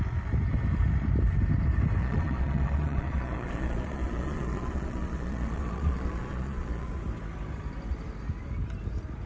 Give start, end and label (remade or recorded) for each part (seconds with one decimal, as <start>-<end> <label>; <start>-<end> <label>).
0.0-2.0 recorded; 2.0-6.9 remade; 6.9-9.3 recorded